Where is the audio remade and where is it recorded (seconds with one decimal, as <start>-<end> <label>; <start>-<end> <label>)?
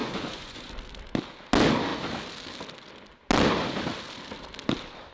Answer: 0.0-0.7 remade; 0.7-5.1 recorded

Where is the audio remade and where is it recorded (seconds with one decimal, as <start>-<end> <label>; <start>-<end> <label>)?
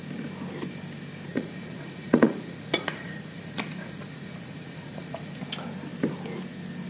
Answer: 0.0-1.3 recorded; 1.3-5.4 remade; 5.4-6.9 recorded